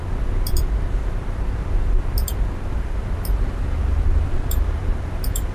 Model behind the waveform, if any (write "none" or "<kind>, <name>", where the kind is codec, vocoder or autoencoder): vocoder, BigVGAN v2